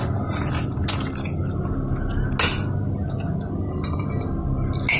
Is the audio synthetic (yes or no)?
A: no